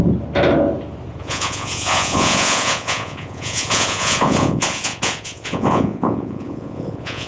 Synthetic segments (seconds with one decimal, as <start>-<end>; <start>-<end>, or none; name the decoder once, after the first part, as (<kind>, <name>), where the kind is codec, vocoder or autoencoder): 1.2-7.3 (vocoder, Vocos)